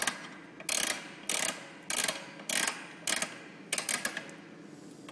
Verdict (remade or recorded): recorded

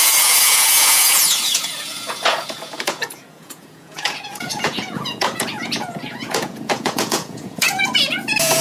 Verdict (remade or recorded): remade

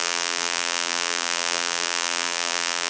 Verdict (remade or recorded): remade